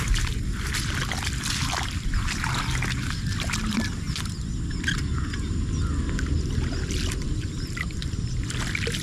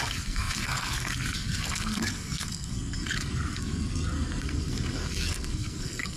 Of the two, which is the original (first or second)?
first